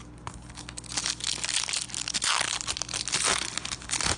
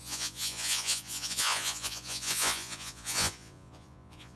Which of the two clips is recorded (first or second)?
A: first